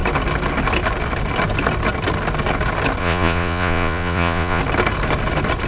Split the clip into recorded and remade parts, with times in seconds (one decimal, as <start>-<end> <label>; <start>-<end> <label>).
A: 0.0-3.0 recorded; 3.0-4.6 remade; 4.6-5.7 recorded